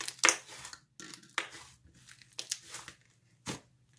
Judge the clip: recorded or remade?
recorded